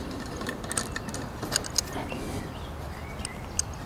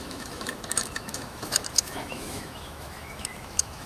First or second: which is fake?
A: second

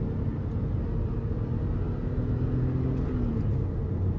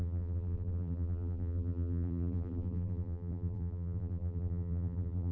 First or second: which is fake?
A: second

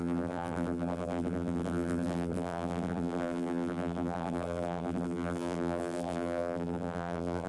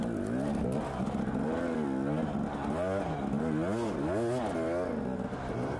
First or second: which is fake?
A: first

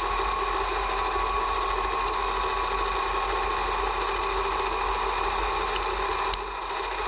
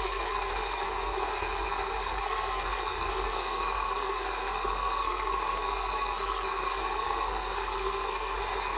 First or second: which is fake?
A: second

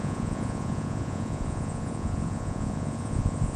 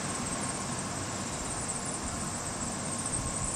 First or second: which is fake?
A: first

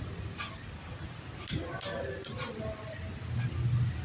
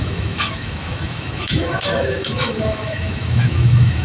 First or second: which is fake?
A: second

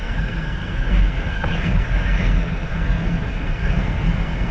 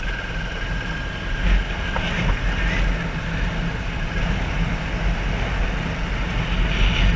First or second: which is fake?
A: first